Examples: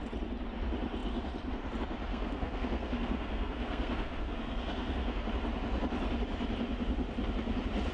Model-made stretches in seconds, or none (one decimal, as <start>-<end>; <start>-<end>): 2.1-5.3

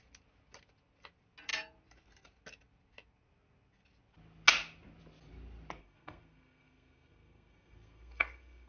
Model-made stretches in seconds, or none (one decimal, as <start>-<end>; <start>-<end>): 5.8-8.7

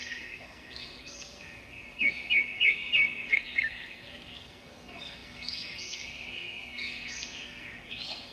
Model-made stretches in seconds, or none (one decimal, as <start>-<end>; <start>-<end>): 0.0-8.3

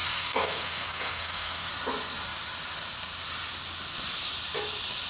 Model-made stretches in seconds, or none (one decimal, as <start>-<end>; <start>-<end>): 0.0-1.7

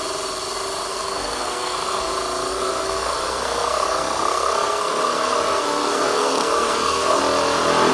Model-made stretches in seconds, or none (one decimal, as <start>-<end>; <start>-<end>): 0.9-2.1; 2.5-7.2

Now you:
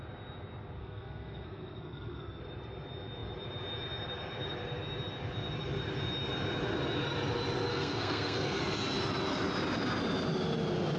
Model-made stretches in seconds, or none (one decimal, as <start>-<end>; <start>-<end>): 0.8-2.4; 7.7-8.6